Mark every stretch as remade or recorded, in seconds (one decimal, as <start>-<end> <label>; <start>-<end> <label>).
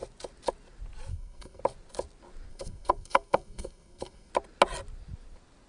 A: 0.0-1.1 recorded; 1.1-1.6 remade; 1.6-2.5 recorded; 2.5-4.3 remade; 4.3-5.7 recorded